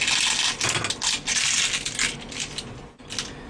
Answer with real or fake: real